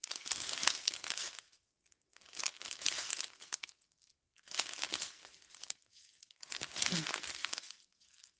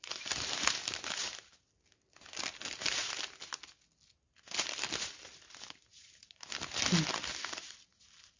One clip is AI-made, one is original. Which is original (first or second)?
second